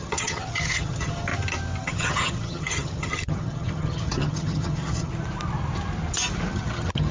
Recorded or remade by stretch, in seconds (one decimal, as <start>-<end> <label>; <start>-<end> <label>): 0.0-1.3 remade; 1.3-1.8 recorded; 1.8-5.1 remade; 5.1-6.5 recorded; 6.5-7.1 remade